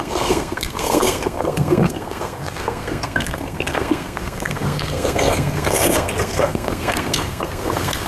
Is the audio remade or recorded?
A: remade